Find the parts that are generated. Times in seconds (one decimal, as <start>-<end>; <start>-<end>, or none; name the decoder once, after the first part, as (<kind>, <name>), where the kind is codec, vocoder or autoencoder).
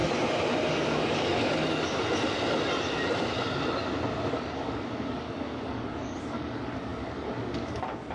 0.7-1.6 (codec, DAC); 4.3-8.1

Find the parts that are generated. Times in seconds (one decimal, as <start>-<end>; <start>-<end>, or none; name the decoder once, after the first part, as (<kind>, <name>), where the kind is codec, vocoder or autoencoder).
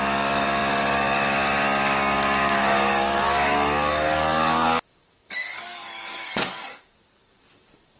0.0-8.0 (codec, DAC)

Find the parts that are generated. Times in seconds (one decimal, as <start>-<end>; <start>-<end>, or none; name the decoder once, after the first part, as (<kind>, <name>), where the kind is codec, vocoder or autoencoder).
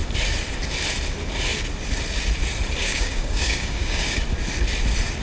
2.8-4.2 (codec, DAC)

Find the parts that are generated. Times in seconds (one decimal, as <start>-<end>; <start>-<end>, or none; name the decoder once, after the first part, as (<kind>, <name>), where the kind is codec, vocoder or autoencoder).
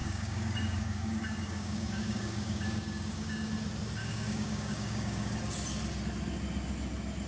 0.0-3.5 (codec, DAC); 4.0-5.3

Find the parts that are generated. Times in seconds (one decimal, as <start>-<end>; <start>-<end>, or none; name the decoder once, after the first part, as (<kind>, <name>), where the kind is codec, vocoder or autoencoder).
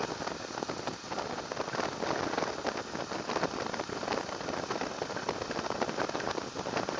none